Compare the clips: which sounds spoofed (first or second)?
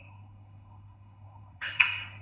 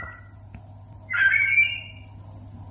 first